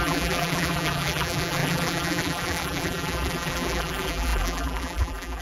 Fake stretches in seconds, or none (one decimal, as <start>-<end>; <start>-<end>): 0.0-5.4